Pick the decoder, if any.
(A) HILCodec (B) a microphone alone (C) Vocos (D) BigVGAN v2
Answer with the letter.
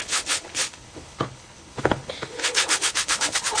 A